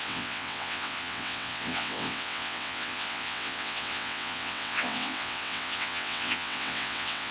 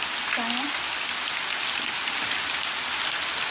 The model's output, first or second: first